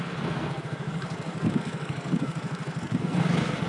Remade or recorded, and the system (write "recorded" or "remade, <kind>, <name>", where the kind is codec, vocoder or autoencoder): remade, codec, SNAC